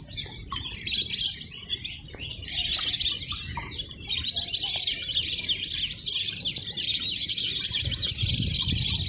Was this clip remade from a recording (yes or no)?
no